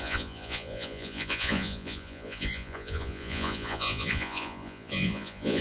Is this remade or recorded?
remade